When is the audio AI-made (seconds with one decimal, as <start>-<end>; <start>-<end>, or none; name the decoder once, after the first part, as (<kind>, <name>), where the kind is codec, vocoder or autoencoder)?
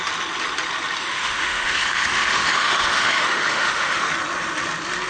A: 1.0-4.1 (autoencoder, DAC-VAE)